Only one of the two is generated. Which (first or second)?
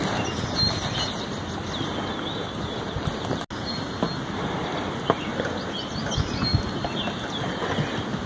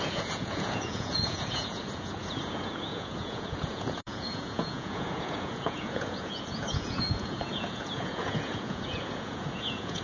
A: second